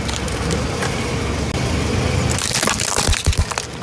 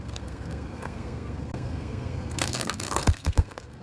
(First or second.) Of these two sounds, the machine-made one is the second